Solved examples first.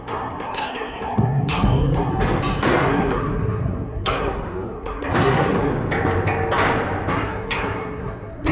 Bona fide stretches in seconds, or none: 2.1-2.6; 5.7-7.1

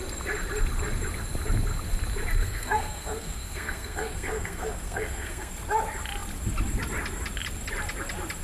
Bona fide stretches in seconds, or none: 0.0-2.4; 5.5-8.4

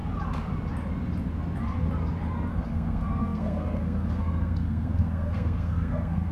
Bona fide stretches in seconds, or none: 0.0-2.5